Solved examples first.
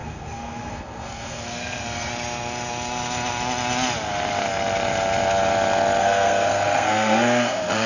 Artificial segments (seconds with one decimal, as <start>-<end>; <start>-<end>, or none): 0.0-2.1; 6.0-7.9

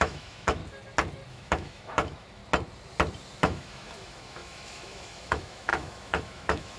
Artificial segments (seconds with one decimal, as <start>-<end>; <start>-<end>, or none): 0.0-0.6; 1.3-2.4; 3.4-6.8

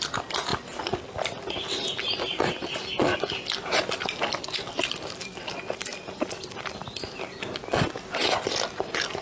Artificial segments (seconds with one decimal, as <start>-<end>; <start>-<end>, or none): none

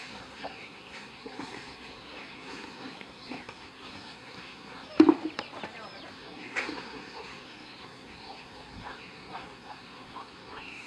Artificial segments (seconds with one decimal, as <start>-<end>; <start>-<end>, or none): 0.0-4.9; 6.1-10.9

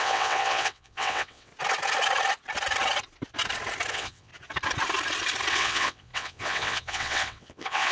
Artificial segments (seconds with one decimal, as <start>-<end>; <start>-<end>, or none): 0.0-1.5; 3.9-4.3; 5.5-7.9